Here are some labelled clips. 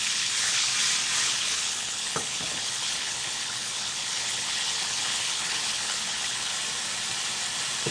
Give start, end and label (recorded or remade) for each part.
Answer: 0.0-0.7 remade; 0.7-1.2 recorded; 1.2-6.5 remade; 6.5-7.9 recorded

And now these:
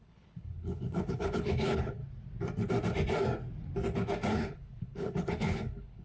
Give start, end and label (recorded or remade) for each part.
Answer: 0.0-2.0 remade; 2.0-4.3 recorded; 4.3-6.0 remade

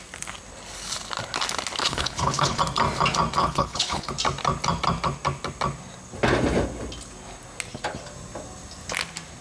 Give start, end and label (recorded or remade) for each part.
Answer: 0.0-1.8 recorded; 1.8-2.6 remade; 2.6-3.4 recorded; 3.4-4.1 remade; 4.1-9.4 recorded

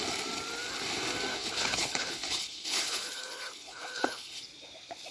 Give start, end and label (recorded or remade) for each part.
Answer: 0.0-1.3 recorded; 1.3-4.4 remade; 4.4-5.1 recorded

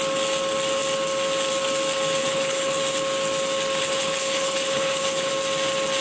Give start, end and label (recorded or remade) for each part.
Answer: 0.0-2.2 recorded; 2.2-2.8 remade; 2.8-3.8 recorded; 3.8-5.3 remade; 5.3-6.0 recorded

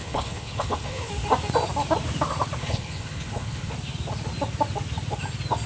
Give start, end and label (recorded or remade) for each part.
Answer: 0.0-1.1 remade; 1.1-2.6 recorded; 2.6-3.7 remade; 3.7-5.7 recorded